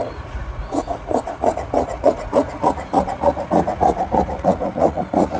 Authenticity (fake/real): fake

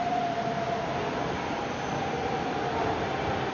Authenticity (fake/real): real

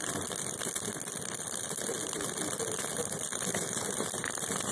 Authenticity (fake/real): real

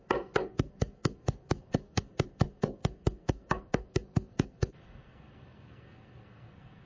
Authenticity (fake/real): fake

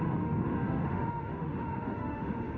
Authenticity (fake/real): fake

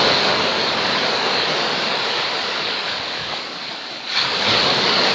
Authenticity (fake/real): fake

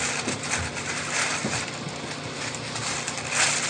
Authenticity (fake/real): real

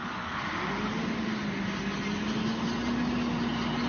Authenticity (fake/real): real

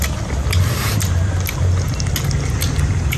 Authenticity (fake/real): real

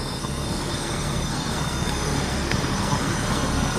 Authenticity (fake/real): fake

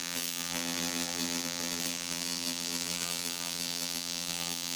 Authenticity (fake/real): fake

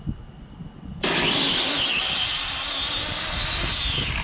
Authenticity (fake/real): real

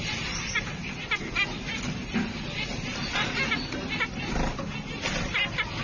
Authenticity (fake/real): real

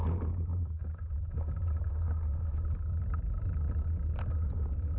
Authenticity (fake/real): real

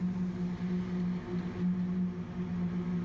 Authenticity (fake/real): real